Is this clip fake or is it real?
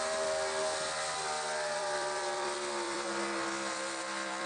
fake